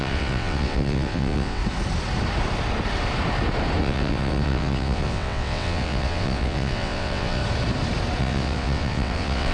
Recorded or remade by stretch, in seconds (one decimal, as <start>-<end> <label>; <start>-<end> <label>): 0.0-1.6 remade; 1.6-3.8 recorded; 3.8-7.4 remade; 7.4-8.2 recorded; 8.2-9.5 remade